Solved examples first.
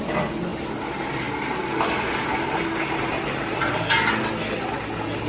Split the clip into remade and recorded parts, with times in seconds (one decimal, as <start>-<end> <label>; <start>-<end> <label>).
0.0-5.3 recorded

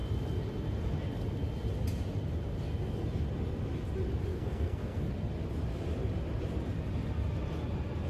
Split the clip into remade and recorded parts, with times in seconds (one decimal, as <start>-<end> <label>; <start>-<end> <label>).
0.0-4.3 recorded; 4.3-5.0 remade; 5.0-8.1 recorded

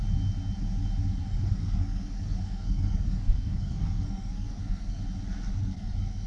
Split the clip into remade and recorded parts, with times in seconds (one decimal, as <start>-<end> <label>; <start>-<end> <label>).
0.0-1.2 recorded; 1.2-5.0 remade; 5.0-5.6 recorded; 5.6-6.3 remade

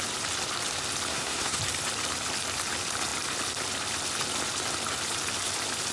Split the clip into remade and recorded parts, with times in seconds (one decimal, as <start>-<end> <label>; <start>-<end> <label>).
0.0-1.1 recorded; 1.1-1.6 remade; 1.6-5.9 recorded

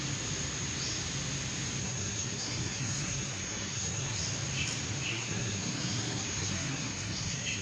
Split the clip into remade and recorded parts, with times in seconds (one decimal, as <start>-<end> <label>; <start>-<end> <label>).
0.0-1.8 recorded; 1.8-4.2 remade; 4.2-5.1 recorded; 5.1-7.6 remade